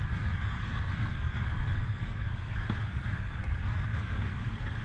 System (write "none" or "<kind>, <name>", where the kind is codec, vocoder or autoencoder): codec, SNAC